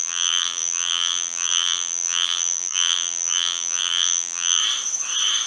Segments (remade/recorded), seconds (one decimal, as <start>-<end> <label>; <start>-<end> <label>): 0.0-4.6 remade; 4.6-5.5 recorded